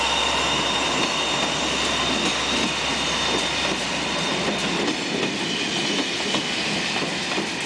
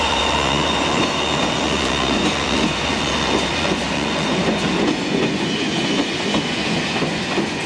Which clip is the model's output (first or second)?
second